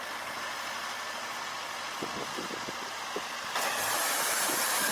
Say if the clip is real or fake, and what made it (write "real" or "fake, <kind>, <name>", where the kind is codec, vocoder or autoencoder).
real